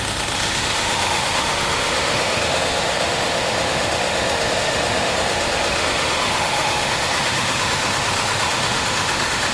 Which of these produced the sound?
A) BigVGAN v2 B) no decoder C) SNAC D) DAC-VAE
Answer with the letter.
D